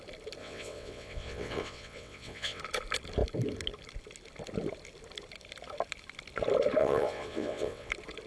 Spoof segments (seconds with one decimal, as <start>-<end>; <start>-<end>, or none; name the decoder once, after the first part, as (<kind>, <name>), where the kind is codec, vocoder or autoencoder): 0.4-2.6 (vocoder, WaveNeXt); 6.8-7.9